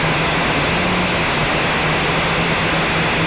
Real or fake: real